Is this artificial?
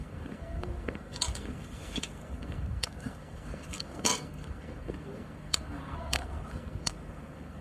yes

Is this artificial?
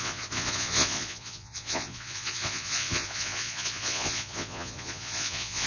yes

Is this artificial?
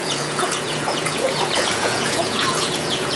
yes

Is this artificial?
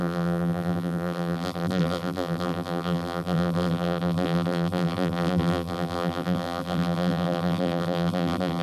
yes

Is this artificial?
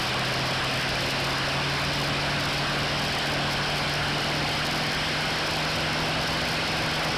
no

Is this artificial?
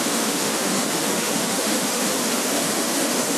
yes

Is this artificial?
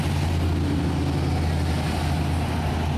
no